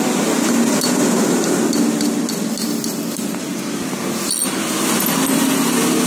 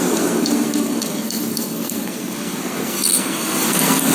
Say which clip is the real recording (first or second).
first